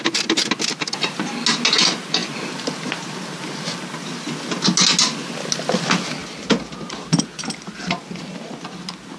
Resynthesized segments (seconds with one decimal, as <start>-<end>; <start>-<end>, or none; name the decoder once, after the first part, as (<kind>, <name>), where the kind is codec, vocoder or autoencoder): none